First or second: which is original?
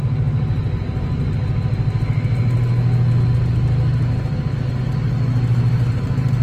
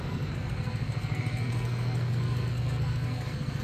first